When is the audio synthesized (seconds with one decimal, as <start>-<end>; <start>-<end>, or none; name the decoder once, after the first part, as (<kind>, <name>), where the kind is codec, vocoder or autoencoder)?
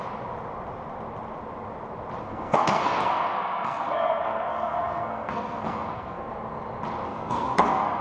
2.2-6.3 (codec, SNAC); 7.1-8.0